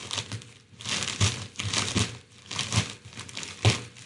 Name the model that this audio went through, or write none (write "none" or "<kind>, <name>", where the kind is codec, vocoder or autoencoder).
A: none